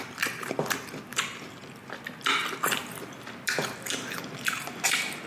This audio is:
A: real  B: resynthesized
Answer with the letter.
A